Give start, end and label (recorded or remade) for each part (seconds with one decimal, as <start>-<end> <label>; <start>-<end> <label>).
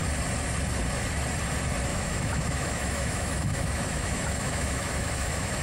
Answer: 0.0-1.9 recorded; 1.9-5.6 remade